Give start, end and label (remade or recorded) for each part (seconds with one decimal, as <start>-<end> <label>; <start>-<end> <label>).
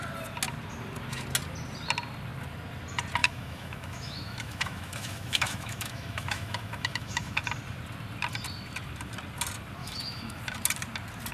0.0-3.2 recorded; 3.2-7.4 remade; 7.4-9.8 recorded; 9.8-10.4 remade; 10.4-11.3 recorded